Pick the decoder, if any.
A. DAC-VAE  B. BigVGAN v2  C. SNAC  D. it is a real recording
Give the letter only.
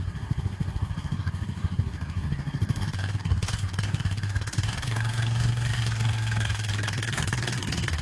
C